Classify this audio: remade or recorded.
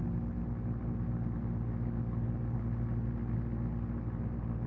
recorded